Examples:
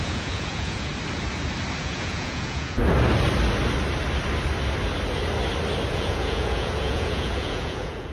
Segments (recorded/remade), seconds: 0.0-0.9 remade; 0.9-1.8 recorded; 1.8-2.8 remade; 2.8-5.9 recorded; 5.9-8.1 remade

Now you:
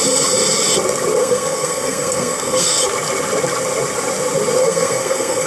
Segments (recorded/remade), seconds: 0.0-1.2 recorded; 1.2-2.8 remade; 2.8-4.6 recorded; 4.6-5.5 remade